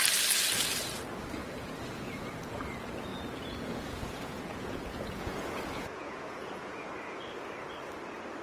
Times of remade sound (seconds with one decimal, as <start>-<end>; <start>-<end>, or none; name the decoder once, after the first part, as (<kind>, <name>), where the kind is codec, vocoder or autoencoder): 1.4-2.5 (vocoder, Vocos); 3.1-6.9